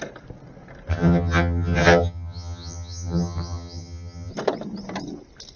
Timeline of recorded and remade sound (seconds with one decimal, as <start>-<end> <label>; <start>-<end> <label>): 0.0-0.9 recorded; 0.9-4.3 remade; 4.3-5.6 recorded